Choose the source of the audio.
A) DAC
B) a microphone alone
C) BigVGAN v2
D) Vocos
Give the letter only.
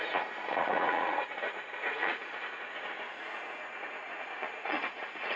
D